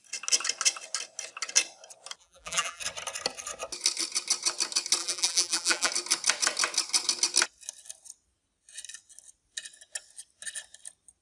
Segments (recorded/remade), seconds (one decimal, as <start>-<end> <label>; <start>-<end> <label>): 0.0-2.2 recorded; 2.2-2.8 remade; 2.8-5.0 recorded; 5.0-5.9 remade; 5.9-11.2 recorded